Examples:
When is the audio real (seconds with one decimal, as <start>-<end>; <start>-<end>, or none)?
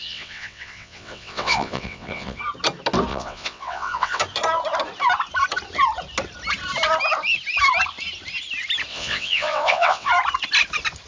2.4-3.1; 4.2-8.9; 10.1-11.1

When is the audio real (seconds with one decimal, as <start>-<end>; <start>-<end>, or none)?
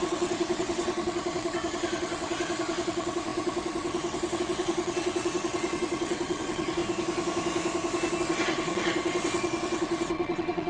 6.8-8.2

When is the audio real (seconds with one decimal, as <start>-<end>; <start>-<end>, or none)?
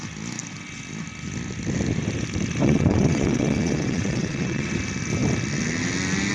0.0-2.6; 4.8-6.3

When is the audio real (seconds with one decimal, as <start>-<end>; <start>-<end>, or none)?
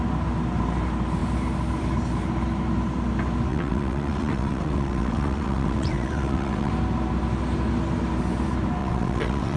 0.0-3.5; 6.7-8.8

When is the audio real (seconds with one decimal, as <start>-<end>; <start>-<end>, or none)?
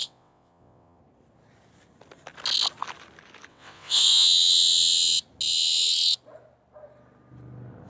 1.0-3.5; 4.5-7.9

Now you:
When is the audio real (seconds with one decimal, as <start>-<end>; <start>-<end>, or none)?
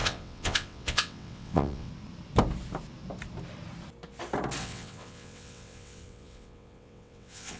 1.9-4.6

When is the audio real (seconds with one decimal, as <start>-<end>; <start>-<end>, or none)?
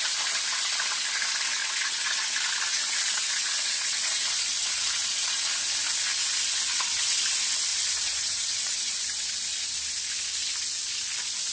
0.0-1.6; 2.3-2.7; 5.5-6.7; 7.2-7.7; 9.0-11.5